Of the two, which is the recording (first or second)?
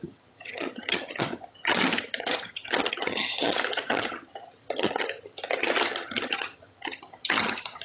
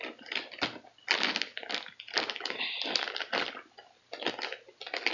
second